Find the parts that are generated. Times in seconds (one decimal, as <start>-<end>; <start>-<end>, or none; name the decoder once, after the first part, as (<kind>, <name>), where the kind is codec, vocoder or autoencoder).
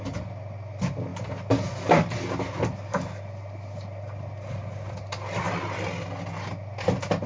none